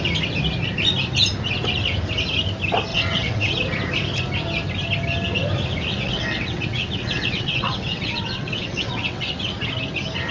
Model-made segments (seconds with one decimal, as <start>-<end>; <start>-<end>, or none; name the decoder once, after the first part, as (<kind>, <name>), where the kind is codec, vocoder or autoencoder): 2.9-3.5 (vocoder, WaveNeXt); 5.9-9.5